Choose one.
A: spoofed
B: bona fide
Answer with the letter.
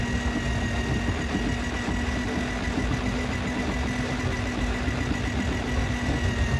B